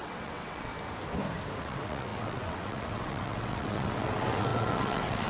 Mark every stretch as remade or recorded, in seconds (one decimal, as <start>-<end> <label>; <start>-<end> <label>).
0.0-0.7 remade; 0.7-1.6 recorded; 1.6-5.3 remade